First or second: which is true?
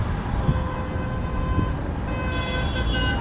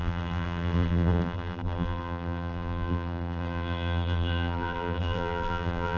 first